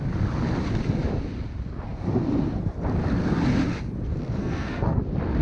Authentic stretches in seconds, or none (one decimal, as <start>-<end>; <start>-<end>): 0.0-4.4; 5.0-5.4